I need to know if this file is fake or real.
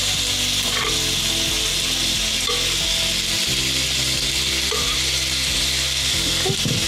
real